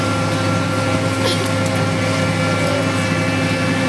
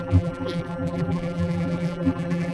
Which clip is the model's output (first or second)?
second